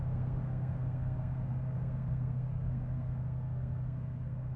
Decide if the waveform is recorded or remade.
remade